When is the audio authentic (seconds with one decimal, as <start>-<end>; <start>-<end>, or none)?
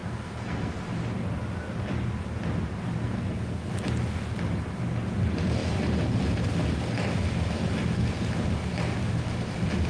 0.7-3.0; 3.7-9.9